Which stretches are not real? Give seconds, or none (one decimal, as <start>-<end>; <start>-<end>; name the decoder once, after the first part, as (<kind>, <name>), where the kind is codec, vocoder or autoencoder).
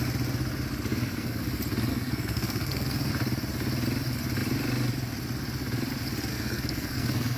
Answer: 0.9-1.4 (codec, SNAC); 1.9-3.1; 6.3-7.4